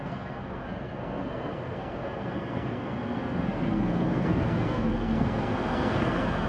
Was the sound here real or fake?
fake